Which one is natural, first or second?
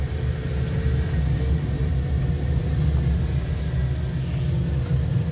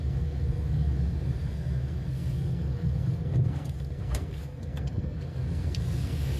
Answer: first